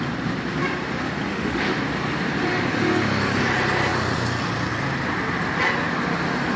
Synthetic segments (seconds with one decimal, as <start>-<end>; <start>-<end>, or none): 1.3-1.8